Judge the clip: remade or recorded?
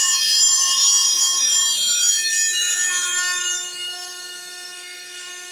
remade